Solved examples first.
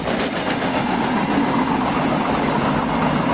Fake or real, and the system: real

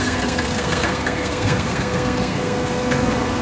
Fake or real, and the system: fake, codec, SNAC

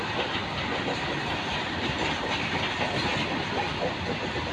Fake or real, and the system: real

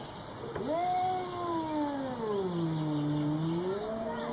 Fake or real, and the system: real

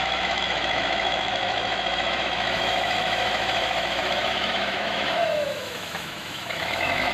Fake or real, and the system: fake, autoencoder, DAC-VAE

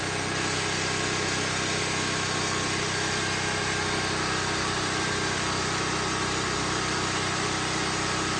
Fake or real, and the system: real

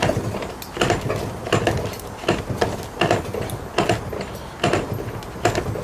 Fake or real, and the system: real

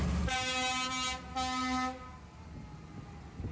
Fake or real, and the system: real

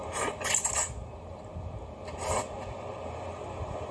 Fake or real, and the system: real